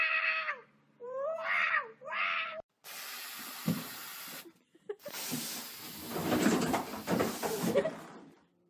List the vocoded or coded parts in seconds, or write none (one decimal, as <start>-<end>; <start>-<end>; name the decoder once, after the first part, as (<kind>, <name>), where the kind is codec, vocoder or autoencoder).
1.0-2.2 (vocoder, BigVGAN v2); 4.1-5.2; 6.2-8.7